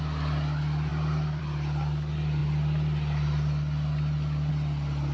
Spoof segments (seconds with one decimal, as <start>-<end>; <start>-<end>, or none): none